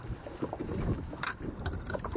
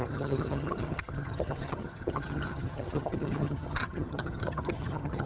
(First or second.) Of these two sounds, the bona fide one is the first